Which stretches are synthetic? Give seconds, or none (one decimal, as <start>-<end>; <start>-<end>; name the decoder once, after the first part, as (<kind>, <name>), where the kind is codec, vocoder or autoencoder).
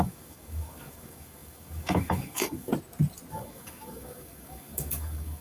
0.0-2.7 (codec, DAC); 3.3-5.4